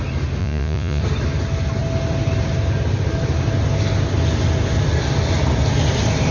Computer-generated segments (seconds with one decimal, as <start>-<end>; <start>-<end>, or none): 0.4-1.0